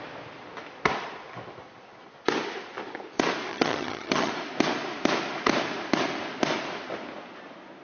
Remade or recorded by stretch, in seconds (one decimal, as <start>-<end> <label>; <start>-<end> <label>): 0.0-3.5 recorded; 3.5-4.3 remade; 4.3-7.8 recorded